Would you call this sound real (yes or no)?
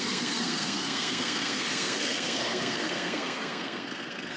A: no